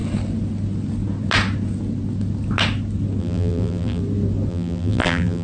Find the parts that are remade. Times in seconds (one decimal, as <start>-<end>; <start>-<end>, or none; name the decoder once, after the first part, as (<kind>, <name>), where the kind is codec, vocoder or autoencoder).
3.2-4.0 (vocoder, BigVGAN v2); 4.5-5.4